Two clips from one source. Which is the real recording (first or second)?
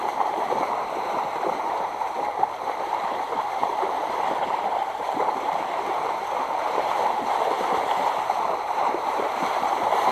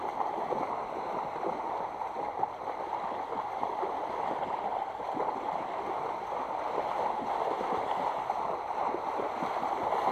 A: second